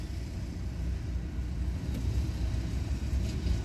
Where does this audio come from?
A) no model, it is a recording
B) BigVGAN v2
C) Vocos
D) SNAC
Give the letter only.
A